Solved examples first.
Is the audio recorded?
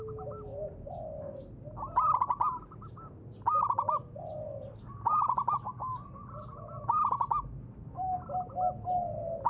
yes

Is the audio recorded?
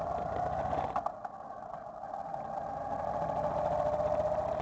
yes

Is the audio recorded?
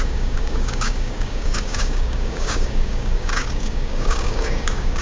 no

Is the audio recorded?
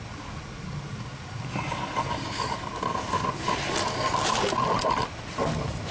yes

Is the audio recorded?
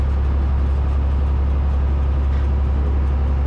yes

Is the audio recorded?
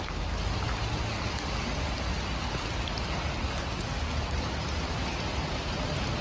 yes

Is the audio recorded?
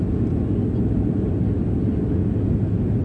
yes